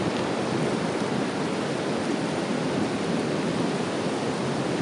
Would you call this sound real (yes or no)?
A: yes